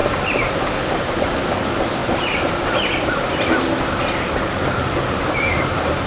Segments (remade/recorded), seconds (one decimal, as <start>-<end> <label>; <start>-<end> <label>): 0.0-6.1 recorded